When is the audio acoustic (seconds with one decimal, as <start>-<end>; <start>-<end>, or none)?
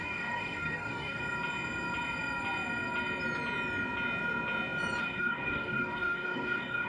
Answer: 1.2-5.0